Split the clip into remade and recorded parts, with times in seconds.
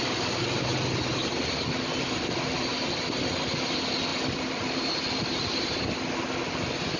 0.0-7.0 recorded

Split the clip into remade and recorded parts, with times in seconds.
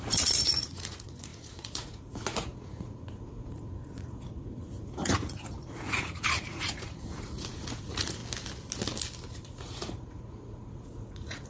0.0-8.2 remade; 8.2-9.3 recorded; 9.3-11.5 remade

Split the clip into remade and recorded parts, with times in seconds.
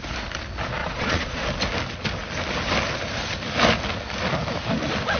0.0-0.8 recorded; 0.8-1.4 remade; 1.4-5.2 recorded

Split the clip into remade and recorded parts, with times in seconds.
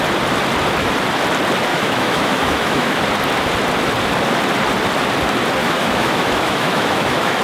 0.0-1.7 recorded; 1.7-3.0 remade; 3.0-5.6 recorded; 5.6-7.4 remade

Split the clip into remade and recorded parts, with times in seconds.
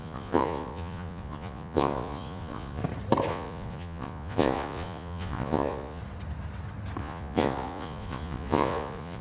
0.0-2.8 remade; 2.8-3.3 recorded; 3.3-6.0 remade; 6.0-7.0 recorded; 7.0-9.2 remade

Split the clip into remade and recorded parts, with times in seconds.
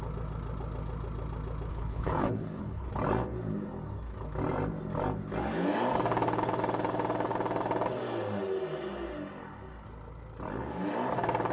0.0-1.7 recorded; 1.7-2.9 remade; 2.9-11.5 recorded